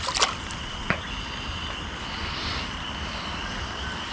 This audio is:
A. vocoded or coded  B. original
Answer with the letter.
B